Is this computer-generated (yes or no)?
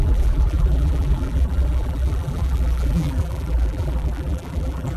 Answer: yes